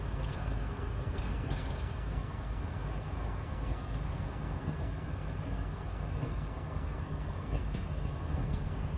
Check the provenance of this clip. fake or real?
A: fake